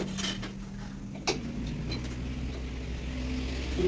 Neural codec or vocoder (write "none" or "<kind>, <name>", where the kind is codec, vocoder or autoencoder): none